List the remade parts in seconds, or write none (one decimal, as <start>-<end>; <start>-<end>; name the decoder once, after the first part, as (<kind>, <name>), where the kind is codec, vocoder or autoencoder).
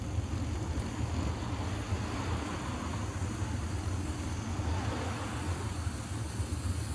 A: none